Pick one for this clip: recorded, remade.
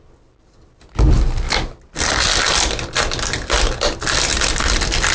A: recorded